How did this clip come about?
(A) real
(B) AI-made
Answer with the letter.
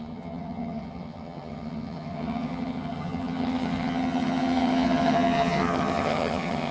B